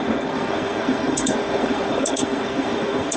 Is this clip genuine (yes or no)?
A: no